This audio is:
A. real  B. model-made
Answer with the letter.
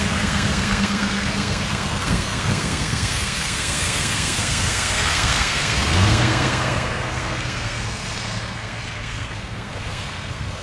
B